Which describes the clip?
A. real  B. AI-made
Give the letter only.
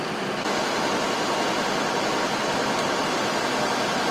A